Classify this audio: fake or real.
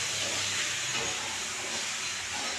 real